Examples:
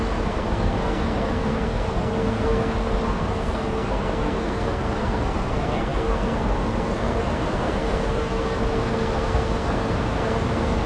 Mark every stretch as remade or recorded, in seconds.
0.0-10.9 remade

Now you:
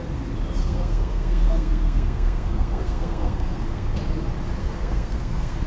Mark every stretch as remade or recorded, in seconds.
0.0-0.6 recorded; 0.6-4.0 remade; 4.0-4.6 recorded; 4.6-5.7 remade

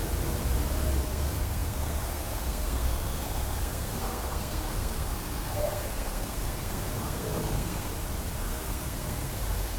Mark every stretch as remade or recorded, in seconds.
0.0-1.0 recorded; 1.0-7.9 remade; 7.9-8.4 recorded; 8.4-9.8 remade

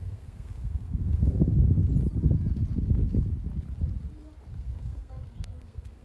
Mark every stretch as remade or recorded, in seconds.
0.0-1.5 remade; 1.5-4.5 recorded; 4.5-6.0 remade

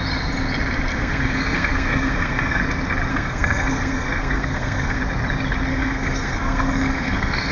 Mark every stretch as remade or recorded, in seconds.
0.0-0.9 recorded; 0.9-2.6 remade; 2.6-3.1 recorded; 3.1-5.0 remade; 5.0-5.7 recorded; 5.7-7.5 remade

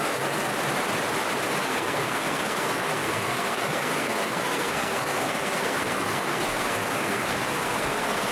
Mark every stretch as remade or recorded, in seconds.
0.0-0.5 remade; 0.5-1.6 recorded; 1.6-8.3 remade

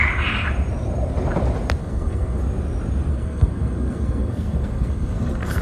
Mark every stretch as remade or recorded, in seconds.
0.0-1.8 recorded; 1.8-2.4 remade; 2.4-3.1 recorded; 3.1-5.6 remade